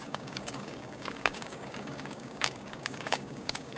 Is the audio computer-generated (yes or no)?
yes